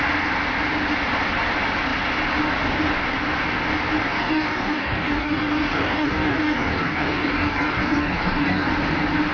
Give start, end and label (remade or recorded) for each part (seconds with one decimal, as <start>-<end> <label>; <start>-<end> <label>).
0.0-4.0 recorded; 4.0-8.7 remade; 8.7-9.3 recorded